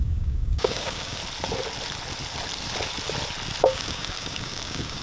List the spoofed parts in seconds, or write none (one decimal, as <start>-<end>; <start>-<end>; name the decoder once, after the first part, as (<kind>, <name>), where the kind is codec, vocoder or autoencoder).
0.0-1.2 (codec, DAC); 3.6-5.0